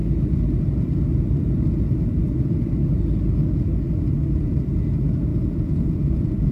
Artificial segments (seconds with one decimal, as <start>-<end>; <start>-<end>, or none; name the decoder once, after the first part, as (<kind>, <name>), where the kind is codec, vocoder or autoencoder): 5.3-6.5 (vocoder, Vocos)